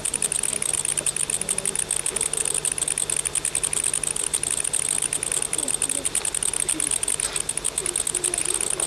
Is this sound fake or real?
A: real